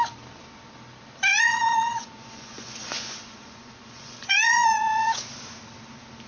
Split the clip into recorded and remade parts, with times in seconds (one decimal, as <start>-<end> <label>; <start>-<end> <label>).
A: 0.0-1.3 recorded; 1.3-5.1 remade; 5.1-6.3 recorded